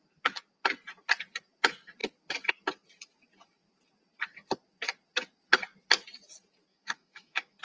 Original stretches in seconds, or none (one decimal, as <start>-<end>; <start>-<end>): 0.0-6.7